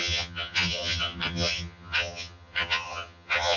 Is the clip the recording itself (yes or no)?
no